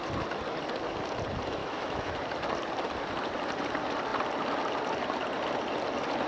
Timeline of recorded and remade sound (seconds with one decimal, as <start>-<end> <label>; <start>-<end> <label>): 0.0-1.6 recorded; 1.6-2.1 remade; 2.1-6.3 recorded